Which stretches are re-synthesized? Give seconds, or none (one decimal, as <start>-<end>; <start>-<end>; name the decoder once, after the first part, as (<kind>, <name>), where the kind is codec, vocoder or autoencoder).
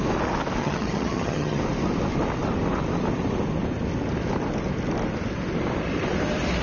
0.6-1.6 (vocoder, HiFi-GAN)